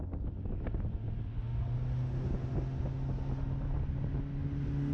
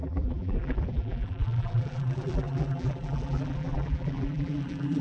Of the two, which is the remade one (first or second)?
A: second